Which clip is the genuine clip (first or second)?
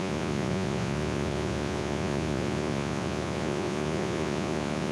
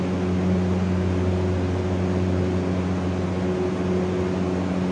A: second